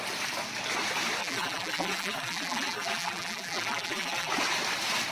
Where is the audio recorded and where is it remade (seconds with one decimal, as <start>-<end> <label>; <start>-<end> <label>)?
0.0-1.2 recorded; 1.2-4.3 remade; 4.3-5.1 recorded